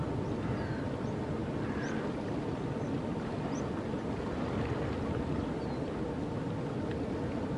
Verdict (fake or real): real